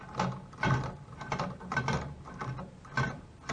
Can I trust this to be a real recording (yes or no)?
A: yes